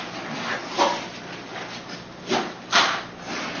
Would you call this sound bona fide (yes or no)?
yes